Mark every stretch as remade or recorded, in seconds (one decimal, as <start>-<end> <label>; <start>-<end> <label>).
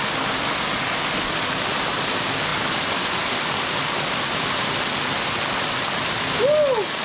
0.0-2.5 recorded; 2.5-4.7 remade; 4.7-7.0 recorded